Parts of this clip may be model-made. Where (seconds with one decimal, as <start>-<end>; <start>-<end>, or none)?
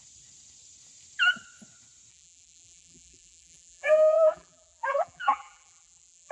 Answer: 2.1-6.3